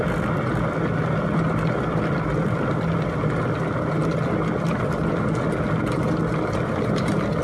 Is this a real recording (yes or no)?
yes